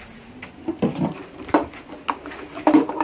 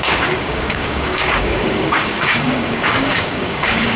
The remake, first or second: second